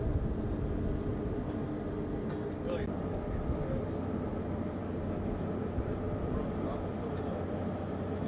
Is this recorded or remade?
recorded